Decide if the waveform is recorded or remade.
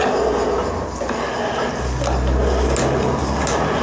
recorded